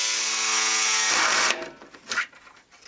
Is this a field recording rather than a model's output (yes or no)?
yes